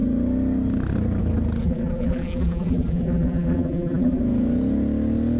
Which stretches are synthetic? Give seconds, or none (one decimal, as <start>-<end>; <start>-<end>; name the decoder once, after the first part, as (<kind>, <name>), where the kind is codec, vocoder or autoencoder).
1.6-4.2 (vocoder, BigVGAN v2)